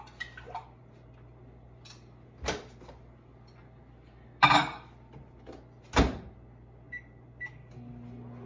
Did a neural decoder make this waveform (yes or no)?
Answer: no